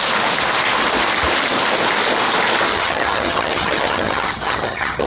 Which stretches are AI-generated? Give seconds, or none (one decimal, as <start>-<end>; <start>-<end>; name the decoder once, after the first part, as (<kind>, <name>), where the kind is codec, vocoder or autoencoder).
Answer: 2.7-5.1 (vocoder, HiFi-GAN)